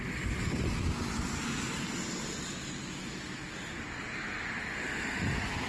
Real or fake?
real